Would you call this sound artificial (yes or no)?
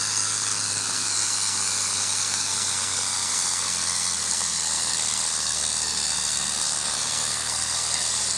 yes